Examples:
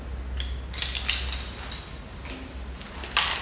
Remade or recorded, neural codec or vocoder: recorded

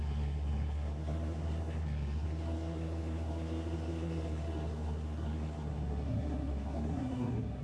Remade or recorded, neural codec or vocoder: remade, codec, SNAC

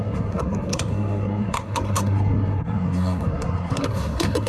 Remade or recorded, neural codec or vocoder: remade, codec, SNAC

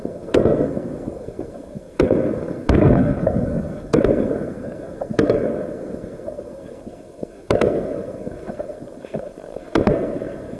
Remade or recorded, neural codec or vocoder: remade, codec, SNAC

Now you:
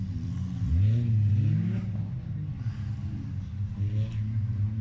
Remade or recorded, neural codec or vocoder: recorded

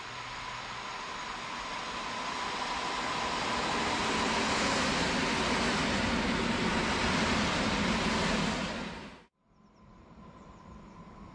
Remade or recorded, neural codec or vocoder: recorded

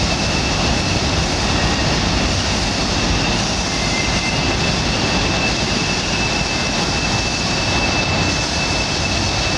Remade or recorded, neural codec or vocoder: recorded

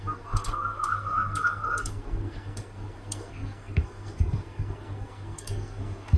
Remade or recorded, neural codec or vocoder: remade, codec, SNAC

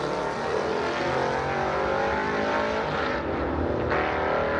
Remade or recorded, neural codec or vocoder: recorded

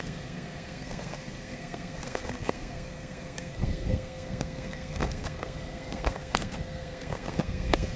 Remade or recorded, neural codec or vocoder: remade, codec, SNAC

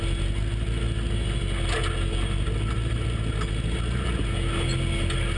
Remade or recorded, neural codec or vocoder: recorded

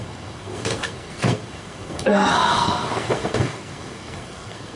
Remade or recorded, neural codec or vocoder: remade, codec, SNAC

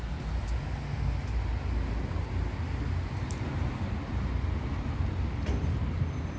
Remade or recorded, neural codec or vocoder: recorded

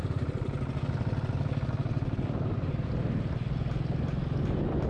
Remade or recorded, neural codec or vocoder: recorded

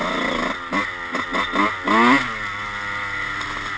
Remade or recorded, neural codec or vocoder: recorded